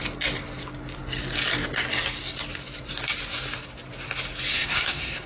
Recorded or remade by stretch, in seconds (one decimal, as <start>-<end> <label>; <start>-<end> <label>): 0.0-4.5 recorded; 4.5-5.3 remade